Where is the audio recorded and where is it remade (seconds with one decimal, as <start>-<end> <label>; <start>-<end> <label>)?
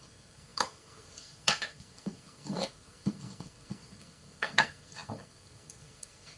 0.0-6.4 remade